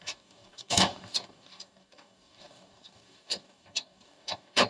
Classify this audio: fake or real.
fake